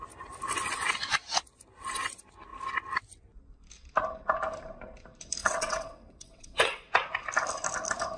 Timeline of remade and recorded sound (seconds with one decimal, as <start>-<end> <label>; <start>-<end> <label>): 0.0-5.4 recorded; 5.4-6.9 remade; 6.9-8.2 recorded